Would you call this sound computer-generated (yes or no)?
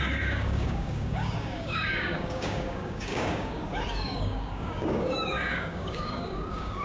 yes